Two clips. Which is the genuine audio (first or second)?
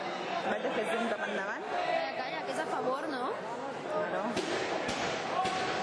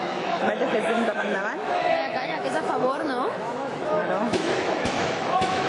first